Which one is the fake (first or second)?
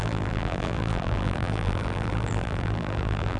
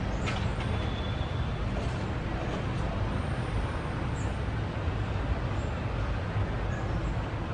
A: first